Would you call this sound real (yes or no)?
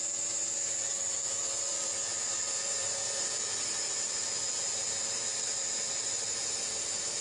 no